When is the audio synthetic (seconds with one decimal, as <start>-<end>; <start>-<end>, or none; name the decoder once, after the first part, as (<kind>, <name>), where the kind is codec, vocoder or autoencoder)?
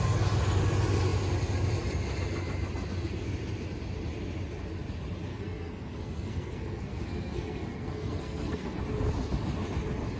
5.3-8.8 (codec, SNAC)